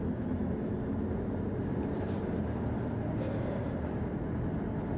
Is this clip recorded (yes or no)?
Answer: yes